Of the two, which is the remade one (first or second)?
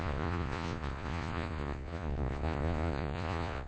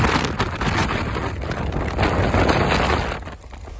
first